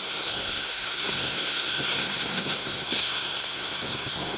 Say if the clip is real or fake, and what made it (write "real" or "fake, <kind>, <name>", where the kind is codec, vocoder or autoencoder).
fake, codec, SNAC